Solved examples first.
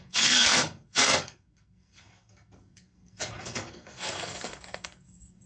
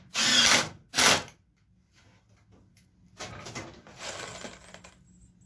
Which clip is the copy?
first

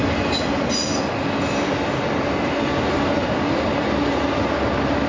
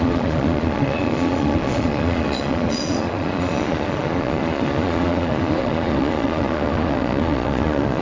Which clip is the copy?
second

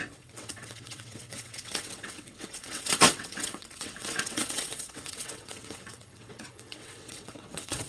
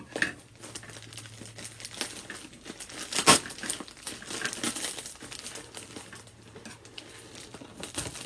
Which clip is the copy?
first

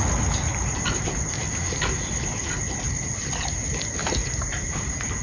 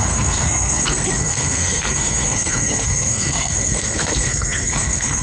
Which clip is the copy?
second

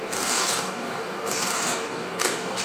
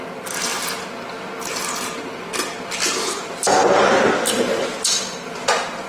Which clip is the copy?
first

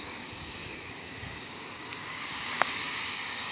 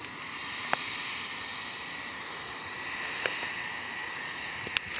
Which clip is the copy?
first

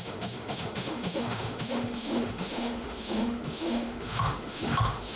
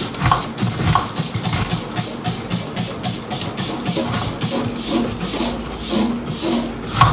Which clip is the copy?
first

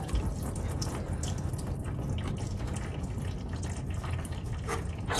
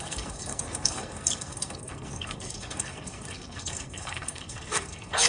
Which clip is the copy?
second